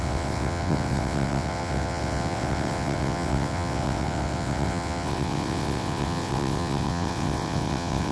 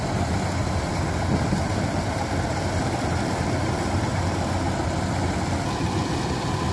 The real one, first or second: second